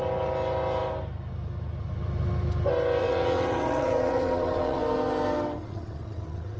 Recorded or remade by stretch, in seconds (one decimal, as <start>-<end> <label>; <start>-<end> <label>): 0.0-3.0 recorded; 3.0-4.8 remade; 4.8-5.6 recorded; 5.6-6.6 remade